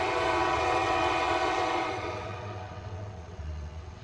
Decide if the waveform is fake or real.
fake